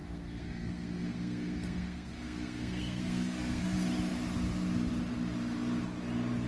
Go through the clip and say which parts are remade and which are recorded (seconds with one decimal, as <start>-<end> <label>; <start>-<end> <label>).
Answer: 0.0-3.6 remade; 3.6-6.5 recorded